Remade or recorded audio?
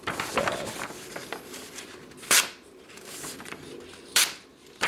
remade